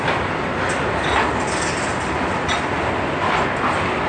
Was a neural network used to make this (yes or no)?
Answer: no